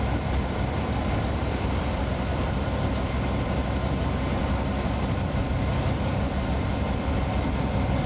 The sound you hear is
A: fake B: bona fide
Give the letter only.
A